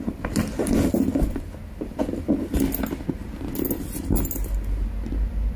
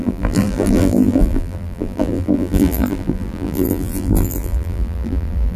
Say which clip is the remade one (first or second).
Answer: second